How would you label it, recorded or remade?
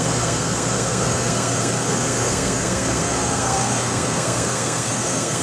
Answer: remade